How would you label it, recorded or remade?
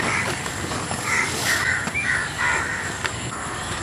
remade